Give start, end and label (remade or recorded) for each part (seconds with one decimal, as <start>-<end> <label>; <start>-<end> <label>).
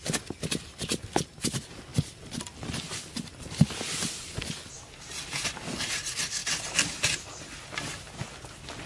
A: 0.0-8.9 recorded